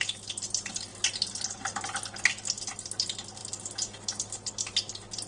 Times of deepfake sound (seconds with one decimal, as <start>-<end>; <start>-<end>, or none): none